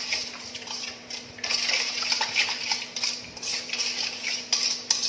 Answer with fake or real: real